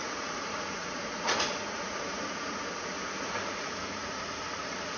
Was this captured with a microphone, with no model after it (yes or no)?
no